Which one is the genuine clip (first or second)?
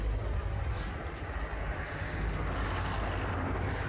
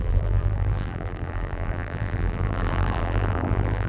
first